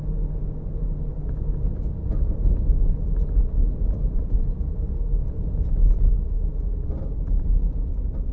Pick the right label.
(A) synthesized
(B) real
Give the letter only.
B